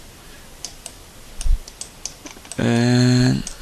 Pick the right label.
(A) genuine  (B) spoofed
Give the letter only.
A